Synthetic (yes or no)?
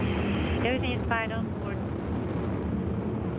no